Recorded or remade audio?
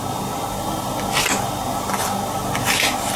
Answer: recorded